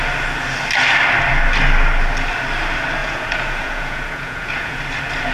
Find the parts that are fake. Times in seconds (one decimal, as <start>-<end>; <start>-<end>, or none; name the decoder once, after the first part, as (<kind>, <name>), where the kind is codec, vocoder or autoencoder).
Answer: 3.0-4.8 (vocoder, Vocos)